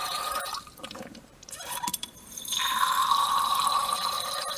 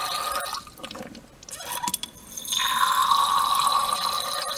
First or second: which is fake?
first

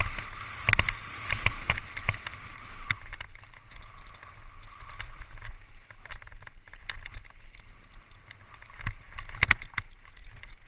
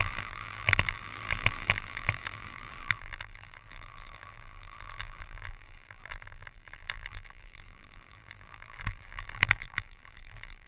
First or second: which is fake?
second